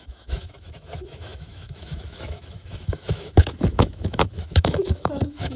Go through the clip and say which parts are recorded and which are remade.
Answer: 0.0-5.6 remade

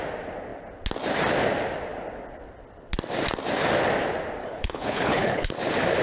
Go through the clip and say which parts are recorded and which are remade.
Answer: 0.0-4.4 recorded; 4.4-5.5 remade; 5.5-6.0 recorded

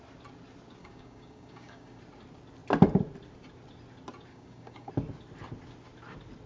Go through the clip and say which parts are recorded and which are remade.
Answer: 0.0-0.8 recorded; 0.8-2.0 remade; 2.0-4.3 recorded; 4.3-4.9 remade; 4.9-6.5 recorded

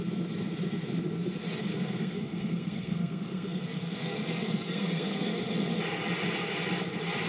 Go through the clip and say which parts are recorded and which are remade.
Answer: 0.0-1.7 recorded; 1.7-5.4 remade; 5.4-7.3 recorded

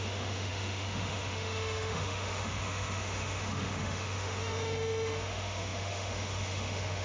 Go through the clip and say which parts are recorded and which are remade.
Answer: 0.0-7.0 remade